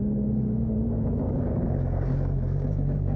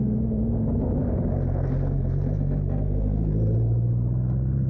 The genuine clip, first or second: second